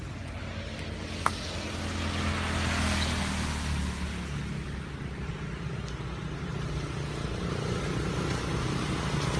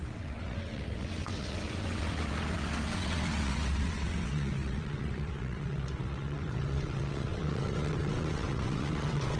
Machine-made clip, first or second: second